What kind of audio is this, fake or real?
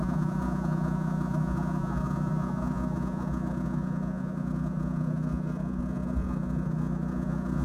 fake